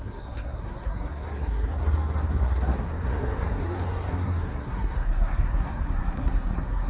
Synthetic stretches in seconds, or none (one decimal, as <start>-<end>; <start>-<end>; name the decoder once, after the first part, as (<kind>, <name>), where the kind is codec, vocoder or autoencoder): 0.0-6.9 (codec, SNAC)